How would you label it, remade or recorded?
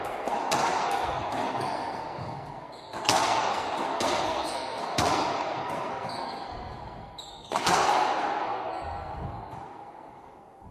remade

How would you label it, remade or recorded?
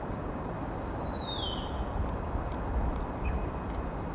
recorded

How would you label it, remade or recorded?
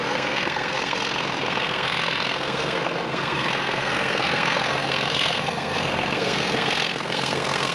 remade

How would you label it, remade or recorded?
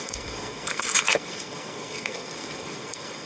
remade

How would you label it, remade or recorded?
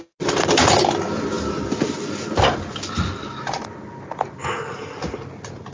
recorded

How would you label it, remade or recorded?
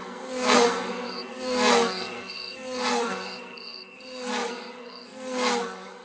remade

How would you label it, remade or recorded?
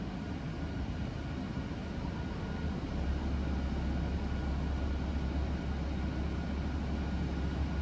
recorded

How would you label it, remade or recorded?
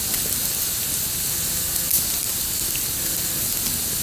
recorded